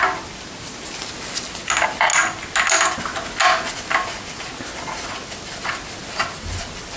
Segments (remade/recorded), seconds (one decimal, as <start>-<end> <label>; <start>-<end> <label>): 0.0-7.0 recorded